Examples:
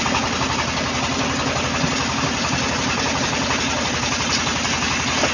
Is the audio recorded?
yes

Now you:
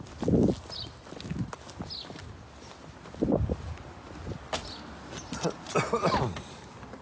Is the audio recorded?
yes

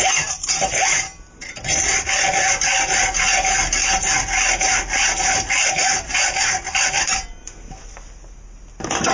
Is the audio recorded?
yes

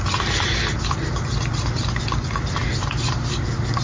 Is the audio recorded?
yes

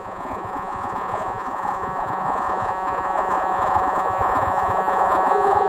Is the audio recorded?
no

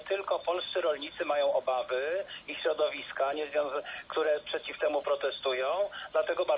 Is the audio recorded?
yes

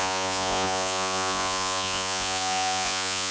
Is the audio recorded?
no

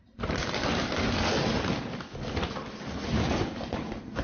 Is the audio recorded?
yes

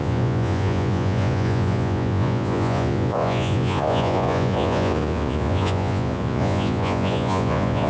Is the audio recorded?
no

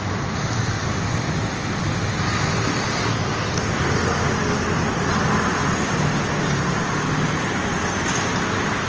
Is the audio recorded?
yes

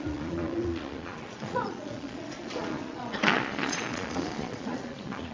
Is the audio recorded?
no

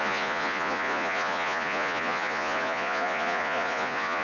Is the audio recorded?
no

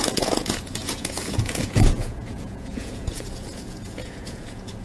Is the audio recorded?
no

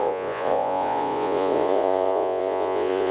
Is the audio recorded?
no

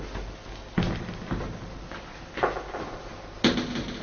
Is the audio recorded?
yes